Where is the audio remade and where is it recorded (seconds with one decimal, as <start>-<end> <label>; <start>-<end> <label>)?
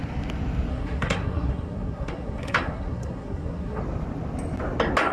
0.0-0.7 recorded; 0.7-3.8 remade; 3.8-5.1 recorded